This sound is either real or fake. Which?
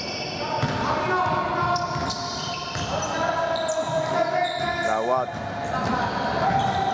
real